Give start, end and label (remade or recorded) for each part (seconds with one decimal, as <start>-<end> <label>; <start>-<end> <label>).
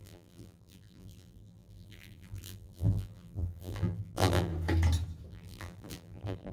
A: 0.0-4.5 remade; 4.5-5.3 recorded; 5.3-6.5 remade